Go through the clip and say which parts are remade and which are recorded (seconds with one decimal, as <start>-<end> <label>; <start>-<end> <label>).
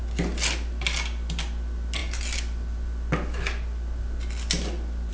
0.0-5.1 recorded